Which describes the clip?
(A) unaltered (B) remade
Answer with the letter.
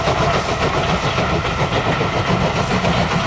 A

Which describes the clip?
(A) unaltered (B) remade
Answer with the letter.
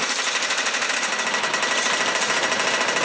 A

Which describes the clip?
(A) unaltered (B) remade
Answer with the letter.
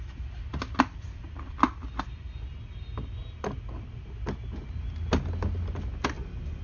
A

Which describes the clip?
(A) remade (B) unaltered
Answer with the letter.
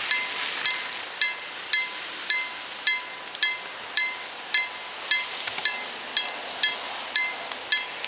B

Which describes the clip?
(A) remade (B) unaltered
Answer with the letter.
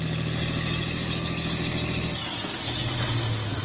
B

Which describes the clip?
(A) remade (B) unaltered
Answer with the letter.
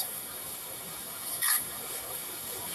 A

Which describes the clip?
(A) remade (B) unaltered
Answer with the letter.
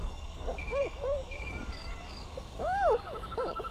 A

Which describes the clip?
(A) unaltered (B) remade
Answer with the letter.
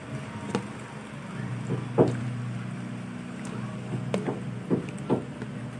A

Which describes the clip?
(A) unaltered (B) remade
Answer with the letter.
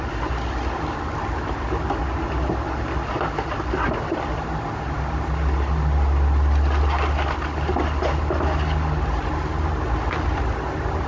A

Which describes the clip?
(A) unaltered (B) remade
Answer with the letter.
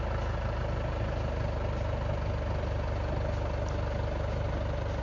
A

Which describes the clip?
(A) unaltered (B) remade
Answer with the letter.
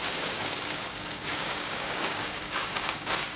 B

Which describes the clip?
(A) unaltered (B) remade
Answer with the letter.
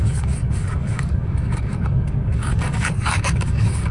B